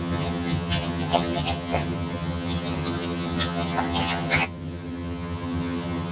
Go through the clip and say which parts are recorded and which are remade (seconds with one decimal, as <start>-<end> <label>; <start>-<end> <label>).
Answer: 0.0-6.1 remade